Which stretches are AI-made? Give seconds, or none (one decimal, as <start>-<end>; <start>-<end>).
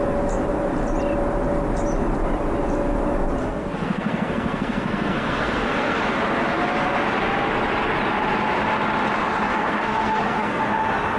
3.4-6.0; 9.5-10.6